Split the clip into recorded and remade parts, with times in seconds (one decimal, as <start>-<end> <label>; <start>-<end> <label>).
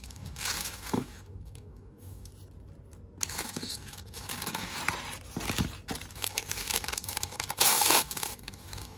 0.0-2.3 remade; 2.3-3.3 recorded; 3.3-4.8 remade; 4.8-6.1 recorded; 6.1-9.0 remade